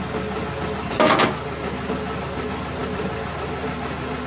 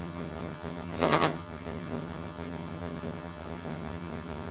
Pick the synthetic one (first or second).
second